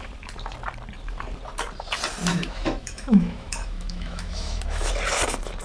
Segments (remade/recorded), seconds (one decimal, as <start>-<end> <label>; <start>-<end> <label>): 0.0-2.3 recorded; 2.3-4.9 remade; 4.9-5.6 recorded